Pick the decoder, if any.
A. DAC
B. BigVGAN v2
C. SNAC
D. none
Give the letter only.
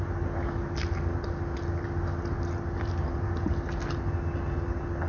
D